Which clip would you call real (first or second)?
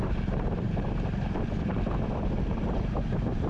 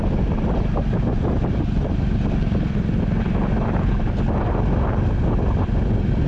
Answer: second